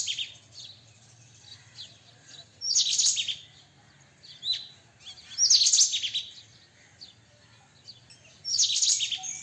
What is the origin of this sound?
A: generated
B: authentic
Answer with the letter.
B